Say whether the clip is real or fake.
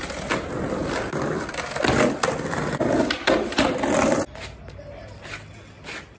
real